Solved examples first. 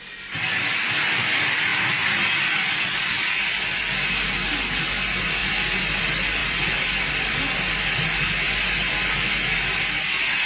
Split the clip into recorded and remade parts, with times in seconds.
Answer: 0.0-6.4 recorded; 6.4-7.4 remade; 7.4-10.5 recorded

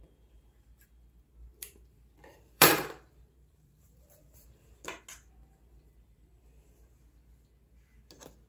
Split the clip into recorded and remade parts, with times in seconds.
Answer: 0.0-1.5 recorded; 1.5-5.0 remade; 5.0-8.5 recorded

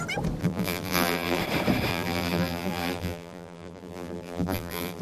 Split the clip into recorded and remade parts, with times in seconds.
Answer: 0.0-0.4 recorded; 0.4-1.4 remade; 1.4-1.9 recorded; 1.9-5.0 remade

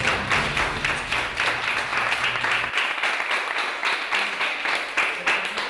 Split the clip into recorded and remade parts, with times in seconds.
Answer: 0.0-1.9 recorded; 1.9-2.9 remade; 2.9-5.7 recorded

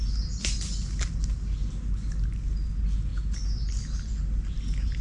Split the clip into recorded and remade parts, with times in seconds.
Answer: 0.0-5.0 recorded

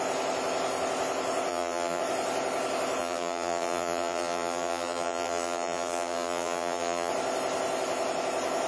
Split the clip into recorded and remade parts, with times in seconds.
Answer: 0.0-1.5 recorded; 1.5-2.0 remade; 2.0-3.0 recorded; 3.0-7.1 remade; 7.1-8.7 recorded

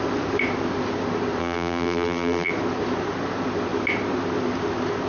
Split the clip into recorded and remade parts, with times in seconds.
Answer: 0.0-1.4 recorded; 1.4-2.5 remade; 2.5-5.1 recorded

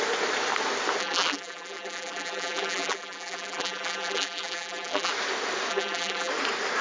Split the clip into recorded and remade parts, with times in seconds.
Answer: 0.0-1.0 recorded; 1.0-5.1 remade; 5.1-5.7 recorded; 5.7-6.3 remade; 6.3-6.8 recorded